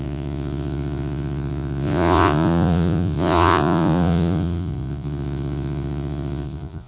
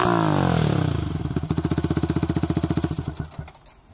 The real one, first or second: second